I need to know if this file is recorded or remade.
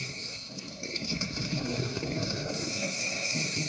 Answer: remade